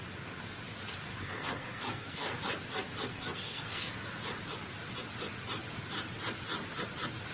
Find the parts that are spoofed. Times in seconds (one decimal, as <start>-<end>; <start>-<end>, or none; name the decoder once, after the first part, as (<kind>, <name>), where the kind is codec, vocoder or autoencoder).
1.1-2.4 (codec, SNAC); 3.1-3.9